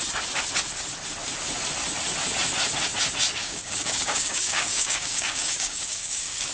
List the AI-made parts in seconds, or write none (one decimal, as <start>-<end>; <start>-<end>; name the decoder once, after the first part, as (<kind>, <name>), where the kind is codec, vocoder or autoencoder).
3.4-6.5 (codec, DAC)